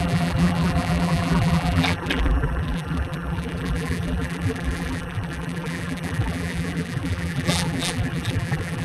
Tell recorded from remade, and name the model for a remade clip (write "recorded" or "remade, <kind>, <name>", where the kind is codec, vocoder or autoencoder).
remade, vocoder, BigVGAN v2